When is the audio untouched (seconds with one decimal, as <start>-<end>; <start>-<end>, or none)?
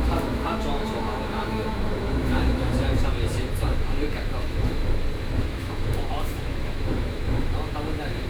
4.8-5.4